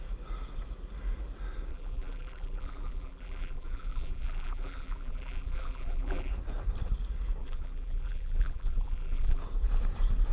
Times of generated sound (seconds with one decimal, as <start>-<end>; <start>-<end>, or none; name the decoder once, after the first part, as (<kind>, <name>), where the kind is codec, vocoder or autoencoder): 1.7-6.3 (vocoder, BigVGAN v2); 7.4-9.4